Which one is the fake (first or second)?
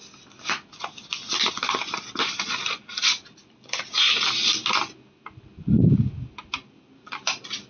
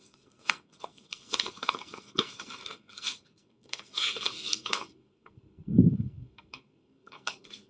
second